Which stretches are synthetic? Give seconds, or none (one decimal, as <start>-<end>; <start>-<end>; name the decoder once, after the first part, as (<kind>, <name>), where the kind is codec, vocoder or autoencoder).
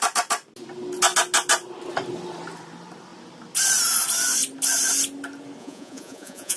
5.6-6.6 (vocoder, Vocos)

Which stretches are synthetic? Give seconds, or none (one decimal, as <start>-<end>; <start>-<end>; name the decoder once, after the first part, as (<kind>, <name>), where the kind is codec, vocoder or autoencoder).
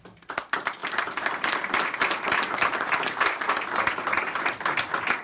none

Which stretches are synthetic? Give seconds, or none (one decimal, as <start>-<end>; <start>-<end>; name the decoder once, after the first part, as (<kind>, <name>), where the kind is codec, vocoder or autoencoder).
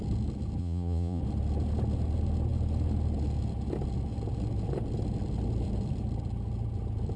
0.6-1.2 (vocoder, Vocos)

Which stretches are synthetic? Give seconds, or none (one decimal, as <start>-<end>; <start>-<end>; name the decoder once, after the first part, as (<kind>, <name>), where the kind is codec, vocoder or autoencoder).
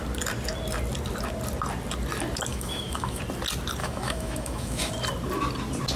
2.5-3.2 (autoencoder, DAC-VAE); 3.8-4.9